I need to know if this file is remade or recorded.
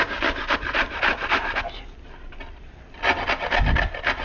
recorded